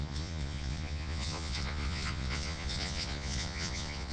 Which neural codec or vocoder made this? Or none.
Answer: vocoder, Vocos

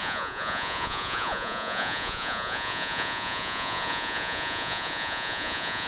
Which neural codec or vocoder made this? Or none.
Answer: vocoder, Vocos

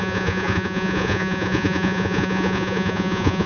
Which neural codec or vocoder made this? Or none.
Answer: vocoder, Vocos